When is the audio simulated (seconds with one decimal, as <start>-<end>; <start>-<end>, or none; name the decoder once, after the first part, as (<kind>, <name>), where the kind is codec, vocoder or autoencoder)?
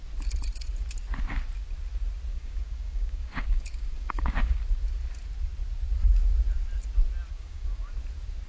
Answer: 2.3-4.6 (codec, DAC); 7.3-7.9